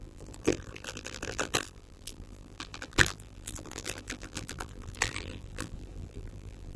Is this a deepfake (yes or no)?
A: yes